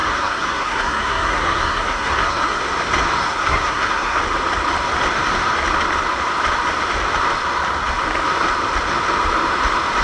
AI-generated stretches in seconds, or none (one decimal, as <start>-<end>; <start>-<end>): 0.0-2.6; 3.2-4.2